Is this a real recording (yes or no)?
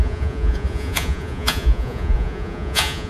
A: no